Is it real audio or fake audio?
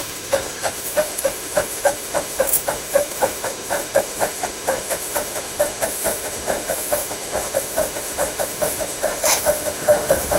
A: fake